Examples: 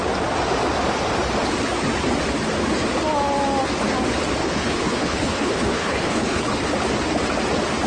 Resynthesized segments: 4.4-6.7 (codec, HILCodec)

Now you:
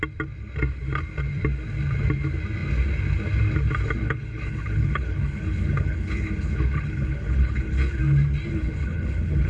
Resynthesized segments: 4.0-8.0 (codec, HILCodec); 8.5-9.5

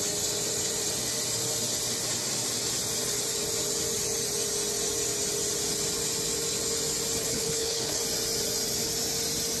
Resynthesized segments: 7.2-8.0 (codec, HILCodec)